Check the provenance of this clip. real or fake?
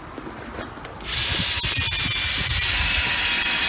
real